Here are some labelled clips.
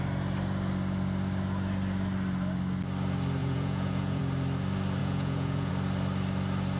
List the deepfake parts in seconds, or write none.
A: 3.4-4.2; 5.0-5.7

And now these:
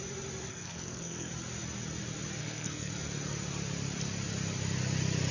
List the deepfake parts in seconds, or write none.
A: 0.5-1.3; 2.4-2.9

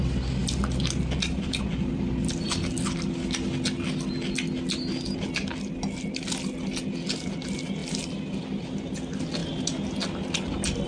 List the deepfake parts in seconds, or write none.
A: none

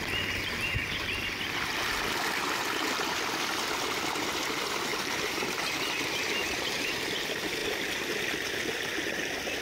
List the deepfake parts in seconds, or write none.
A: 4.9-5.7; 6.4-7.0